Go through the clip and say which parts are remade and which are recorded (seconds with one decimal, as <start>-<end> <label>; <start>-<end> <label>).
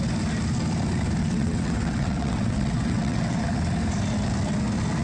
0.0-1.2 recorded; 1.2-3.4 remade; 3.4-5.0 recorded